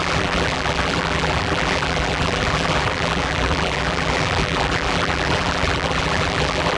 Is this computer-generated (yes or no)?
yes